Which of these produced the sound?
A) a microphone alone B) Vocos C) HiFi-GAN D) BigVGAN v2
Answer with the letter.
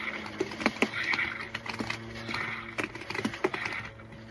A